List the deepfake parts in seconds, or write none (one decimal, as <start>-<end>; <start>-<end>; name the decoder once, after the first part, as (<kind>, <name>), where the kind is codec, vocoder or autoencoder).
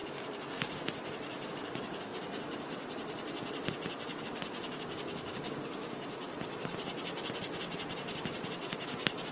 1.5-2.1 (codec, DAC); 4.2-6.3